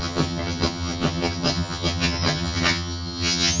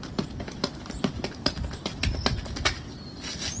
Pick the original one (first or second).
second